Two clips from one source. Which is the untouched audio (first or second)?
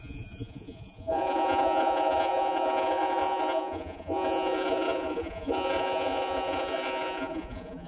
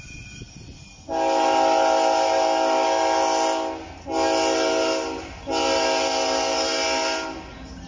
second